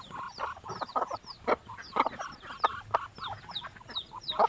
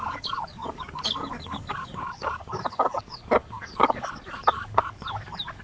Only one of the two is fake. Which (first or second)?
second